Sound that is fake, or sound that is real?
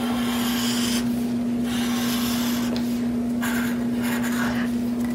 real